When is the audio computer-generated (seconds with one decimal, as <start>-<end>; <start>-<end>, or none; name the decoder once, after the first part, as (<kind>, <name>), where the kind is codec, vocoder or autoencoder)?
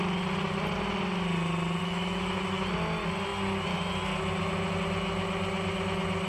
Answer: 1.8-2.6 (autoencoder, DAC-VAE)